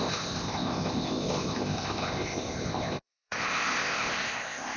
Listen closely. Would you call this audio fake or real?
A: fake